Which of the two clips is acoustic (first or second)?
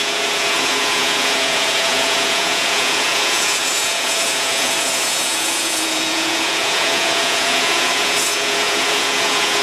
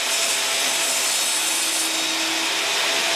second